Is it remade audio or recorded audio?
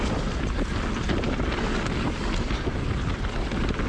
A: recorded